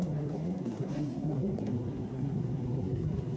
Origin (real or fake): fake